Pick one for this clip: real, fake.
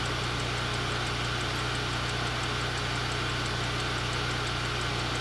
real